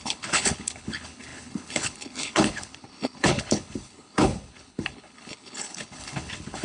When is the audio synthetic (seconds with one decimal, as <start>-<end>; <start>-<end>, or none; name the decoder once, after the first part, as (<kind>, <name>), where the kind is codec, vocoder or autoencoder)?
0.0-6.6 (codec, HILCodec)